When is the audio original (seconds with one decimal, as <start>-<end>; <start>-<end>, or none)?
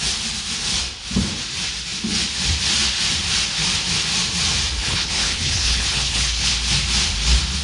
0.0-4.8; 6.5-7.6